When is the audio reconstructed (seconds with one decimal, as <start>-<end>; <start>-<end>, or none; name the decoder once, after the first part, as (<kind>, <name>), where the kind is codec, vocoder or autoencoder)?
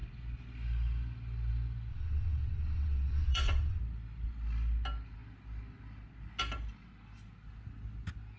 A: 1.9-3.8 (vocoder, WaveNeXt)